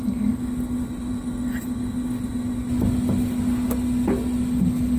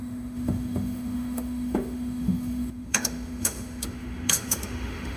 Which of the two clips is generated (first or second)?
second